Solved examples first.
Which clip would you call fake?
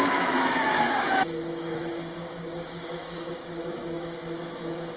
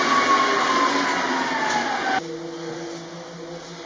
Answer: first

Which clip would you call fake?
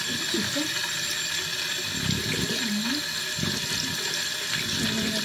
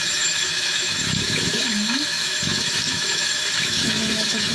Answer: second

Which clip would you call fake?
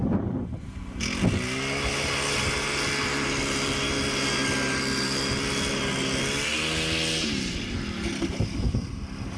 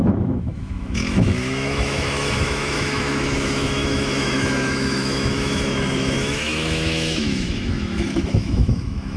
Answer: second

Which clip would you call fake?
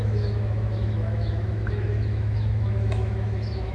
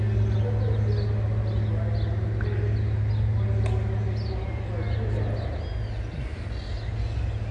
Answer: first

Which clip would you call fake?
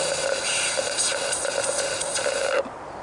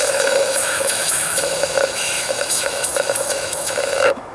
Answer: second